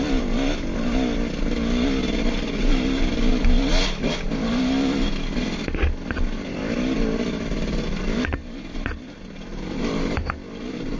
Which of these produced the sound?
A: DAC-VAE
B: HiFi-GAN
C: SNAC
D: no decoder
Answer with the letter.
D